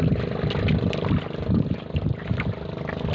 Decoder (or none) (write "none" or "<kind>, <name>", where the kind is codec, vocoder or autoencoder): none